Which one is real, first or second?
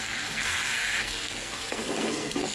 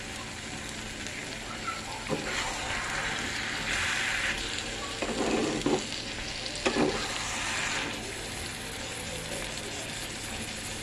second